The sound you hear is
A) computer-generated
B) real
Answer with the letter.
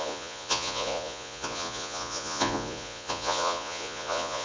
A